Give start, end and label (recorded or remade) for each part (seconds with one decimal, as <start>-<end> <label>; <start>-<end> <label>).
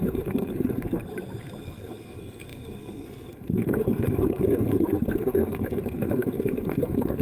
0.0-1.0 remade; 1.0-1.6 recorded; 1.6-7.2 remade